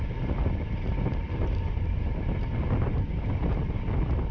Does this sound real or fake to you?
real